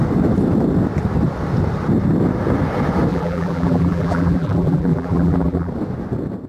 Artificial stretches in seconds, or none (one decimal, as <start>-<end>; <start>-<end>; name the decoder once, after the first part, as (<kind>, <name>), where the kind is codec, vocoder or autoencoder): 3.1-5.7 (vocoder, BigVGAN v2)